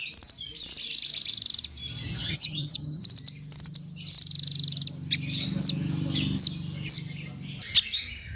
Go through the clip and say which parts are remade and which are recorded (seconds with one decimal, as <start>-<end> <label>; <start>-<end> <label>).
0.0-2.2 recorded; 2.2-3.0 remade; 3.0-8.3 recorded